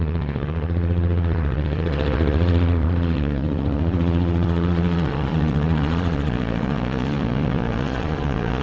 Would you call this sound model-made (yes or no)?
yes